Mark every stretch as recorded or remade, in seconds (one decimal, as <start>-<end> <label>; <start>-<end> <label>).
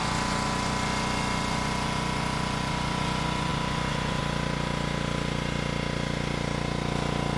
0.0-4.2 remade; 4.2-7.4 recorded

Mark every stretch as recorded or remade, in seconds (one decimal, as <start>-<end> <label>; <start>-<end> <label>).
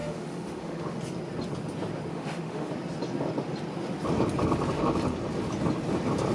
0.0-1.0 remade; 1.0-2.1 recorded; 2.1-2.7 remade; 2.7-6.3 recorded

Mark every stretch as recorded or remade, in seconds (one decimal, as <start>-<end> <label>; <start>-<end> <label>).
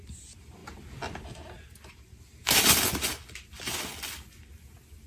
0.0-5.1 recorded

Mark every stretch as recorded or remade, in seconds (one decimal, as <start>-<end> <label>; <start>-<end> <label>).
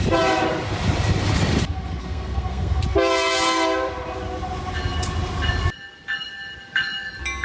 0.0-2.0 recorded; 2.0-2.8 remade; 2.8-7.4 recorded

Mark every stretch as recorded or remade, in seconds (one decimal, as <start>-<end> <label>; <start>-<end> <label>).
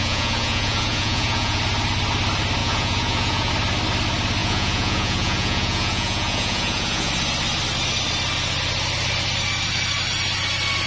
0.0-1.6 remade; 1.6-2.6 recorded; 2.6-3.5 remade; 3.5-4.4 recorded; 4.4-7.1 remade; 7.1-10.9 recorded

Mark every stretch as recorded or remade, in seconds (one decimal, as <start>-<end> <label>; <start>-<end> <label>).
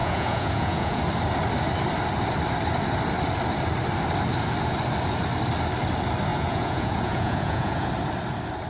0.0-1.0 remade; 1.0-6.3 recorded; 6.3-7.9 remade; 7.9-8.7 recorded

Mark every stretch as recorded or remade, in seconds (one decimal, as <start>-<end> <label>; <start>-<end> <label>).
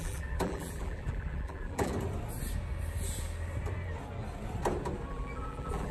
0.0-1.9 remade; 1.9-5.1 recorded; 5.1-5.9 remade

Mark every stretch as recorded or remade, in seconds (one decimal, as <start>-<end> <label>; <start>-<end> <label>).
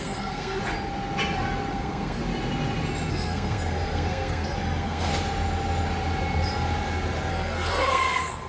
0.0-0.6 remade; 0.6-1.7 recorded; 1.7-2.2 remade; 2.2-3.1 recorded; 3.1-5.1 remade; 5.1-7.3 recorded; 7.3-8.5 remade